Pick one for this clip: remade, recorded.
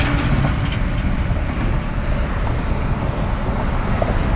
recorded